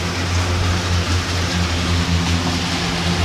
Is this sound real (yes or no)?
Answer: yes